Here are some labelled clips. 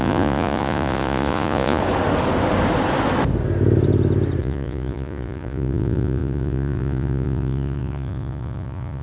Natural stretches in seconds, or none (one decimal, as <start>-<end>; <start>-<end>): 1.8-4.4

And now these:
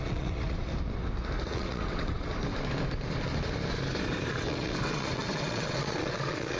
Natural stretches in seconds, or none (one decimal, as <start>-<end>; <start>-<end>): 0.7-1.5; 2.3-4.3

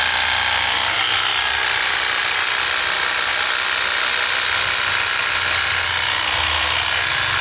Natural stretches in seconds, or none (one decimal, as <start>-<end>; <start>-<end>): 0.0-7.4

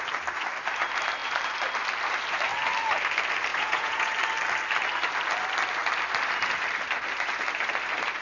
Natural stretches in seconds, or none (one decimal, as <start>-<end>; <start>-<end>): 0.0-3.5; 4.1-8.2

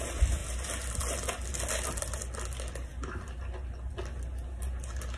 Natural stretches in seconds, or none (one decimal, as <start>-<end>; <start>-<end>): 0.0-5.2